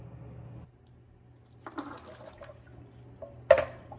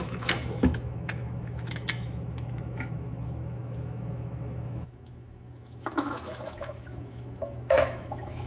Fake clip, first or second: second